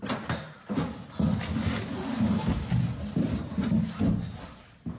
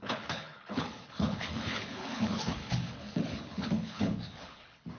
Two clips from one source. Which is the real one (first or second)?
first